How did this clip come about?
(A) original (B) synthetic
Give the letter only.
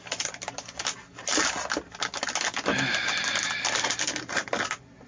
A